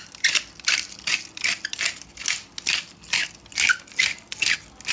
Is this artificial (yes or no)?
no